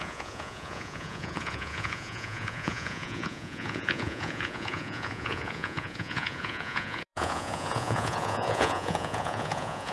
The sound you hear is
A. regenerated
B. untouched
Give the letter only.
A